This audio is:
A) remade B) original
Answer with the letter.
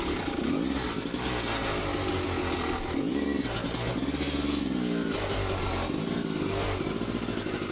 B